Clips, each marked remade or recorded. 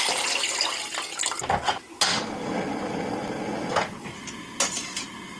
recorded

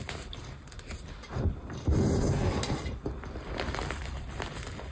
recorded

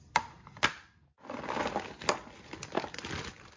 recorded